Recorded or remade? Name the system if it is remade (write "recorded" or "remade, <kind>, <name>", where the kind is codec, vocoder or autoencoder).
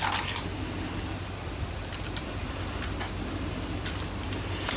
recorded